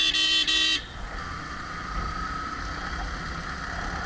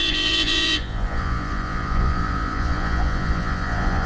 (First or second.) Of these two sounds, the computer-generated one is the second